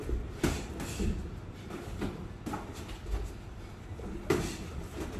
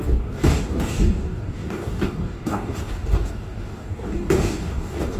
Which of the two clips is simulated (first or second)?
second